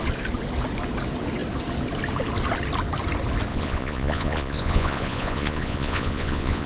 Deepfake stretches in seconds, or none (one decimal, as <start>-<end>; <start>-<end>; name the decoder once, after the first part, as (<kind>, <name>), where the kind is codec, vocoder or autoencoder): 3.5-6.7 (vocoder, Vocos)